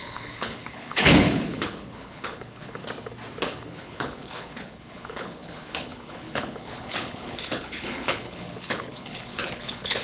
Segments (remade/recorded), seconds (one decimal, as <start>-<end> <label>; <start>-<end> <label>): 0.0-2.8 remade; 2.8-3.4 recorded; 3.4-10.0 remade